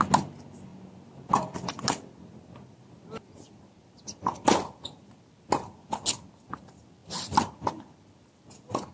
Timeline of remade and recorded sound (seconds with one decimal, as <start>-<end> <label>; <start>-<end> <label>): 0.0-8.9 recorded